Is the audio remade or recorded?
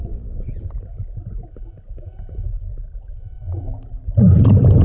recorded